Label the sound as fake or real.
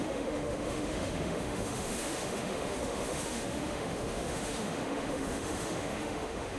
fake